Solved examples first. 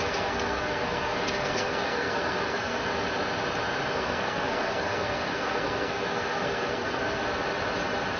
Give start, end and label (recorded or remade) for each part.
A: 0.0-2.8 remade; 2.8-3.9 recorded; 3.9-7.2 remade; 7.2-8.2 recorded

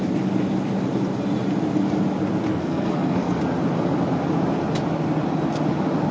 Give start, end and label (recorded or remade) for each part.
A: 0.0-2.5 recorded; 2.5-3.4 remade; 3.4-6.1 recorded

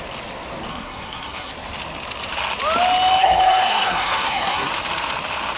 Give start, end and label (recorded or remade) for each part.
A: 0.0-0.7 recorded; 0.7-1.5 remade; 1.5-3.2 recorded; 3.2-4.7 remade; 4.7-5.6 recorded

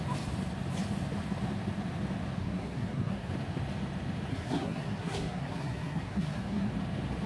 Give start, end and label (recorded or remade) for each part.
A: 0.0-2.4 recorded; 2.4-3.3 remade; 3.3-4.3 recorded; 4.3-6.7 remade; 6.7-7.3 recorded

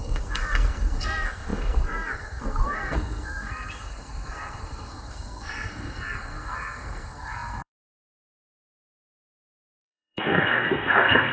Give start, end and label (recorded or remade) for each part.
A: 0.0-11.3 remade